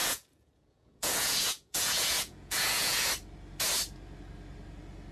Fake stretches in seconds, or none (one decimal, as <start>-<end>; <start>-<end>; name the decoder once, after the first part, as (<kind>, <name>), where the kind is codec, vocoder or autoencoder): 0.0-3.1 (vocoder, Vocos)